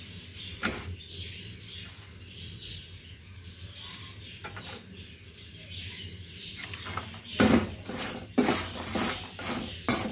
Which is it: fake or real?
real